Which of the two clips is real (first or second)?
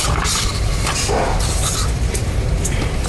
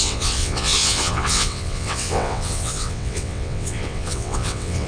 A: first